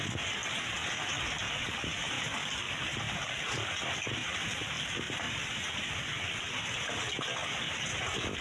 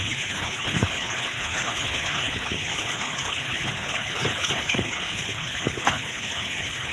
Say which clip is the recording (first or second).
first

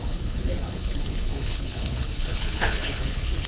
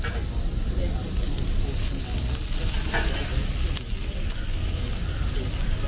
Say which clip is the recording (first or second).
second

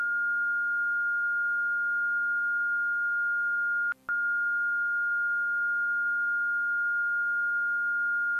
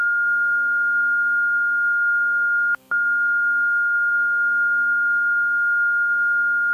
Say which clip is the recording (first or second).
first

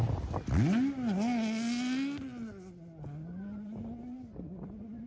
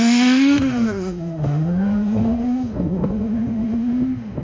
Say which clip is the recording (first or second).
first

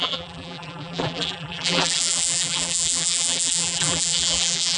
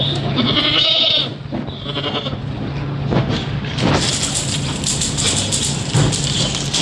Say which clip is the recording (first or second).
second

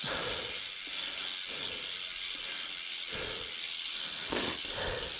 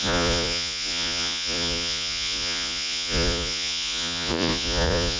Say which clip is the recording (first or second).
first